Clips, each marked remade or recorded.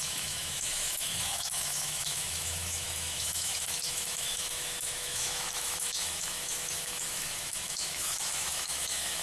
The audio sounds remade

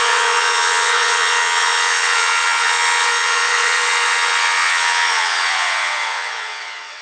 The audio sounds remade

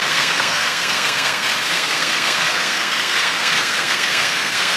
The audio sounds remade